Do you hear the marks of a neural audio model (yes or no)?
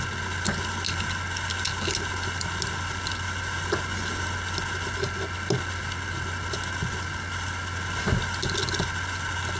no